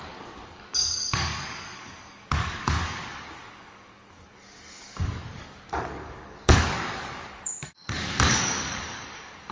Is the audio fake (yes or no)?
yes